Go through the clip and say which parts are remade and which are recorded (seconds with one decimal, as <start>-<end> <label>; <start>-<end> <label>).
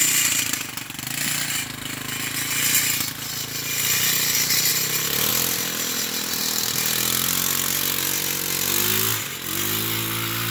0.0-4.7 recorded; 4.7-5.3 remade; 5.3-10.5 recorded